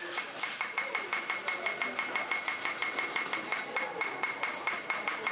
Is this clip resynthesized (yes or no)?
yes